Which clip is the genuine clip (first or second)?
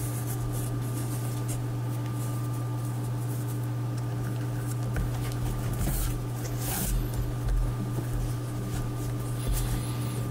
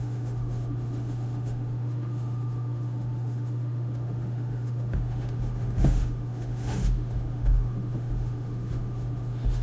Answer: first